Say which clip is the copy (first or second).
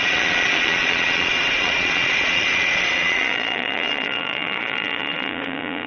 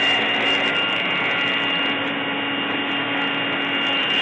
first